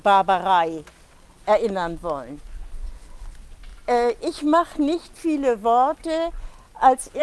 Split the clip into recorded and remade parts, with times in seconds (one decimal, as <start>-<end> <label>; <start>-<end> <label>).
0.0-7.2 recorded

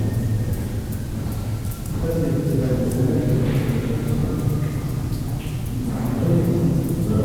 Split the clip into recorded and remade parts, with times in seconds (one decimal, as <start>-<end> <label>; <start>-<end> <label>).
0.0-7.2 recorded

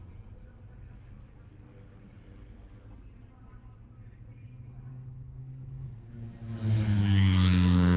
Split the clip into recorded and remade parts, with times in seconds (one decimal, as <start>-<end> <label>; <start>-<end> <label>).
0.0-4.9 recorded; 4.9-6.1 remade; 6.1-7.0 recorded; 7.0-8.0 remade

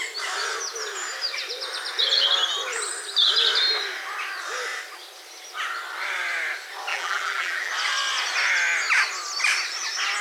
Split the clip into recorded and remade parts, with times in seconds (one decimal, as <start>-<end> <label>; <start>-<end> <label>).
0.0-6.9 recorded; 6.9-7.7 remade; 7.7-10.2 recorded

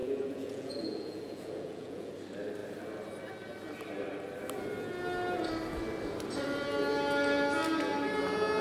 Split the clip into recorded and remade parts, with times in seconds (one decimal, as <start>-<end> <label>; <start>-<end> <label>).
0.0-2.1 remade; 2.1-8.6 recorded

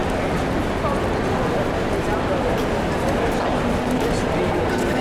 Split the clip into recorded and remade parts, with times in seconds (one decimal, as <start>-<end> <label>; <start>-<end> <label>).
0.0-5.0 recorded

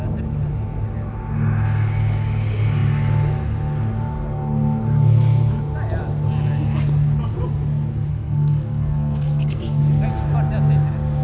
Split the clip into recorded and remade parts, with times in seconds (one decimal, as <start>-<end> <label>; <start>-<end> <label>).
0.0-8.1 recorded; 8.1-9.8 remade; 9.8-11.2 recorded

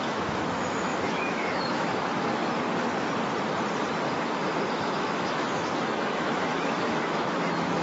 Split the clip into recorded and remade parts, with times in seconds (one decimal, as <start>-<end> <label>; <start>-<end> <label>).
0.0-2.4 remade; 2.4-4.7 recorded; 4.7-7.8 remade